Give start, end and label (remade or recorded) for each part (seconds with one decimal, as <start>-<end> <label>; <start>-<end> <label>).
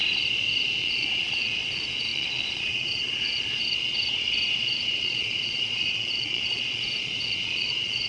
0.0-0.8 recorded; 0.8-8.1 remade